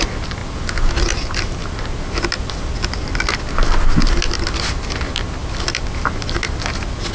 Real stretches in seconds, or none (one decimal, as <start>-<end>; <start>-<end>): 0.0-7.1